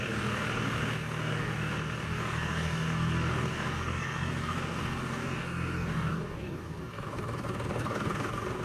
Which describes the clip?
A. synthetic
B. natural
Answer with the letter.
A